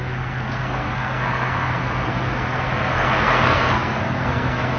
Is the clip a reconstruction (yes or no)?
yes